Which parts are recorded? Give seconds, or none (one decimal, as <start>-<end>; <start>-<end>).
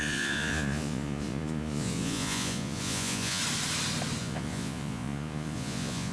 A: 3.4-4.2